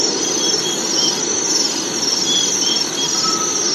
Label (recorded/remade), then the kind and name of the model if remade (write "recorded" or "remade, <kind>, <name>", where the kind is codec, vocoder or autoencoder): recorded